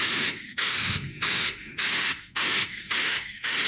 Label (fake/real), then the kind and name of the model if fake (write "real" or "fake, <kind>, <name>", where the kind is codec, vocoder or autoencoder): fake, autoencoder, DAC-VAE